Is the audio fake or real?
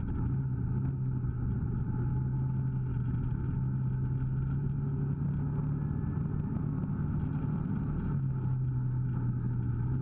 real